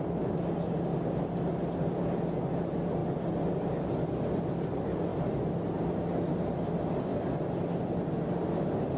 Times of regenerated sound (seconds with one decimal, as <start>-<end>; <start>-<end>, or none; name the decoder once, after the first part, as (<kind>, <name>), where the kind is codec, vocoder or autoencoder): none